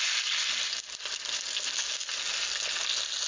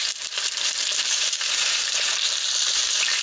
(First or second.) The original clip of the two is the first